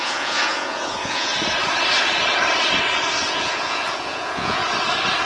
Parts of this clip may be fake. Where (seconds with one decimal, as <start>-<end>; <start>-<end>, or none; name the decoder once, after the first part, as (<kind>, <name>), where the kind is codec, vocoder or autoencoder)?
0.0-1.3 (vocoder, Vocos); 3.3-4.6